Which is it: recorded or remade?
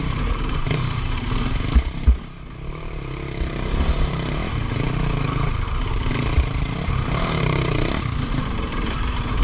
remade